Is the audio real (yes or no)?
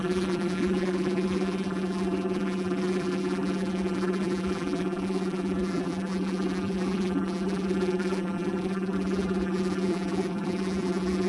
no